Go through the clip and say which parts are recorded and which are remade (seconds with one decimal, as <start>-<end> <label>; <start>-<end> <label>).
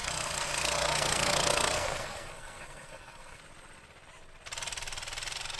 0.0-3.4 remade; 3.4-5.6 recorded